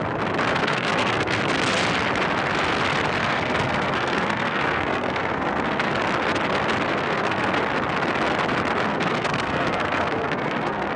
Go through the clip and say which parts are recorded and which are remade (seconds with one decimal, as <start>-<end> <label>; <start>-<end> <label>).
0.0-0.6 recorded; 0.6-1.4 remade; 1.4-3.2 recorded; 3.2-5.9 remade; 5.9-6.9 recorded; 6.9-7.6 remade; 7.6-8.9 recorded; 8.9-11.0 remade